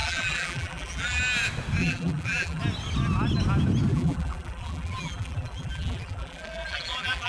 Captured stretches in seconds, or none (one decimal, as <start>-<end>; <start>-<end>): 1.2-1.8; 2.6-3.9